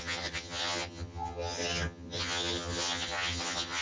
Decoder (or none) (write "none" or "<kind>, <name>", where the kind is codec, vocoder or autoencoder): vocoder, HiFi-GAN